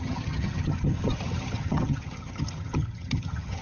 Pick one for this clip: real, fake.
fake